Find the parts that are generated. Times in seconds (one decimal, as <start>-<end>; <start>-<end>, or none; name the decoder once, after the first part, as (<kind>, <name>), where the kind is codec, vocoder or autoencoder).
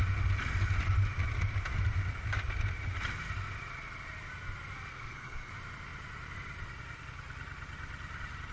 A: 4.9-5.5 (codec, SNAC)